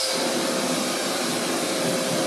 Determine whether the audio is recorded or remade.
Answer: recorded